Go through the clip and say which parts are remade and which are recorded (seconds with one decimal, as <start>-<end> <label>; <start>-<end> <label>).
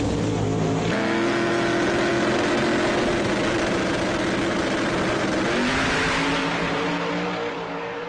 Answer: 0.0-6.4 recorded; 6.4-7.1 remade; 7.1-8.1 recorded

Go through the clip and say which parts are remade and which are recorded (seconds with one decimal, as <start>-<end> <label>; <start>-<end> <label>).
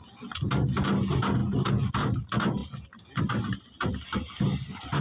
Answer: 0.0-5.0 recorded